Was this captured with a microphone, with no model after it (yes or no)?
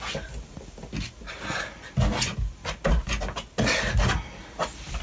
yes